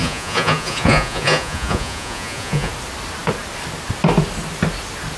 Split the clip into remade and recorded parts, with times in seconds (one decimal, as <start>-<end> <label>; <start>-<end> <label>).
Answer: 0.0-2.7 remade; 2.7-5.2 recorded